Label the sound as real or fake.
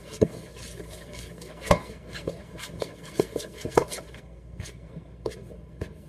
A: fake